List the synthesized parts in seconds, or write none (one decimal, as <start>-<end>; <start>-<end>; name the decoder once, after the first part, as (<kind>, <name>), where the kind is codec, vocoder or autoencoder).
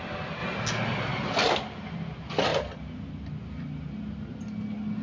none